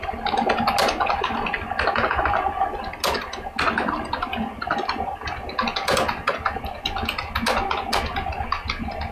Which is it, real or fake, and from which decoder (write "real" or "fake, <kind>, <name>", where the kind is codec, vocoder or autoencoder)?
real